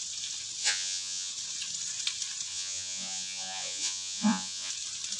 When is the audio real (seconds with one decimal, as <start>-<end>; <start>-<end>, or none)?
0.0-0.6; 1.3-2.5; 4.7-5.2